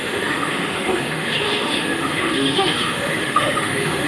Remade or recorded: remade